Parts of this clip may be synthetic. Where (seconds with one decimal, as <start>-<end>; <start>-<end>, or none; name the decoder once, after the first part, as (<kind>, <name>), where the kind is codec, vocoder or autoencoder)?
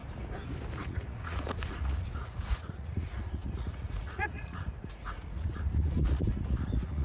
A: 0.8-7.0 (vocoder, Vocos)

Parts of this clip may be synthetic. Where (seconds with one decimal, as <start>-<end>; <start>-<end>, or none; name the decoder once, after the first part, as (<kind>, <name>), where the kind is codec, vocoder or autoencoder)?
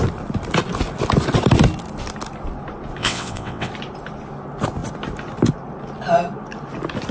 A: 3.0-3.7 (vocoder, WaveNeXt)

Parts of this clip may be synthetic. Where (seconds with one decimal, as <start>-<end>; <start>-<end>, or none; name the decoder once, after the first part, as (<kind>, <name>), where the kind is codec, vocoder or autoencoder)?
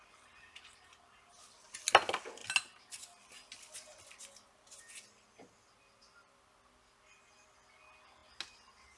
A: none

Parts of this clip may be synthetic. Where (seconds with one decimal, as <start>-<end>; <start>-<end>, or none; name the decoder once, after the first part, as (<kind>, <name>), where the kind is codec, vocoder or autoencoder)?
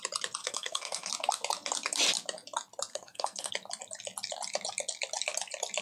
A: 0.4-1.1 (codec, SNAC); 2.9-3.5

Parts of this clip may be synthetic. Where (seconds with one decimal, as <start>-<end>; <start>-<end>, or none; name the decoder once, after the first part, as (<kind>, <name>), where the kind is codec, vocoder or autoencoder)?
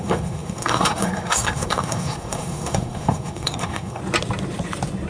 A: 0.0-4.0 (codec, SNAC)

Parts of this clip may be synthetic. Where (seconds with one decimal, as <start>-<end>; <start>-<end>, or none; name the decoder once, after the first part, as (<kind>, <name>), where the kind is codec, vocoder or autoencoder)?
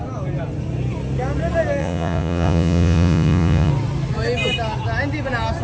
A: 1.8-3.7 (vocoder, Vocos)